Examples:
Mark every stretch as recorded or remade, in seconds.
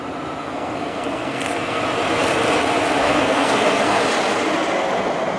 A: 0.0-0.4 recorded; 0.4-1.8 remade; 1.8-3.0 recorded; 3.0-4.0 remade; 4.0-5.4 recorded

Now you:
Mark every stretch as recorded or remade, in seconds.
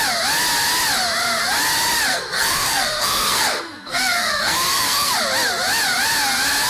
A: 0.0-2.1 recorded; 2.1-5.1 remade; 5.1-6.7 recorded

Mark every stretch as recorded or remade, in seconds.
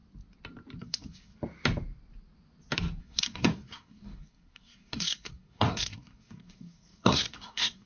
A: 0.0-0.8 recorded; 0.8-1.3 remade; 1.3-3.0 recorded; 3.0-7.9 remade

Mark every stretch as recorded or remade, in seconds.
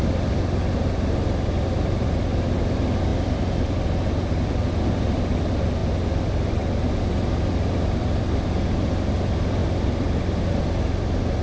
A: 0.0-11.4 recorded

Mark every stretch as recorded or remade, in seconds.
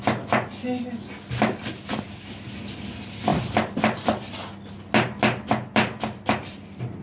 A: 0.0-7.0 recorded